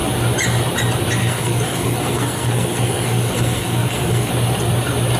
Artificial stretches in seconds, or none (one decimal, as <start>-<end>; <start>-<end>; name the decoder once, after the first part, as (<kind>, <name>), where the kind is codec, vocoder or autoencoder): 1.2-4.3 (codec, SNAC)